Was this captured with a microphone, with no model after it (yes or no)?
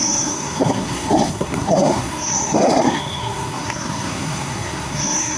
no